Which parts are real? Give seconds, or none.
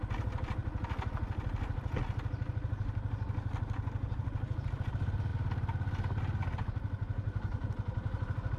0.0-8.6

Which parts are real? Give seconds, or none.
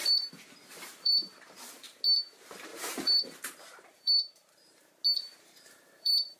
2.0-2.7; 4.8-5.3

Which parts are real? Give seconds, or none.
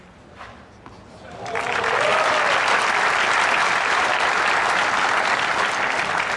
0.0-6.4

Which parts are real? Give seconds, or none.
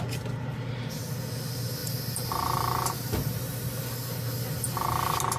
0.0-1.8; 3.1-5.4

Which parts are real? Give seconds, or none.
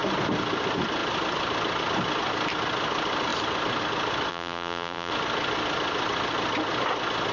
0.0-4.3; 5.1-7.3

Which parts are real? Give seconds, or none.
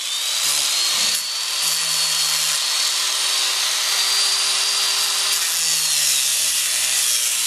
0.0-6.3; 7.0-7.5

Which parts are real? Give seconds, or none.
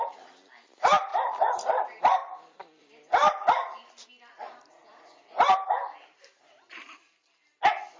2.2-2.8; 4.8-6.7